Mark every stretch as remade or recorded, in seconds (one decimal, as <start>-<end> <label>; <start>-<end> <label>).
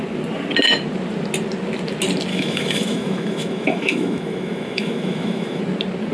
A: 0.0-2.3 recorded; 2.3-5.6 remade; 5.6-6.1 recorded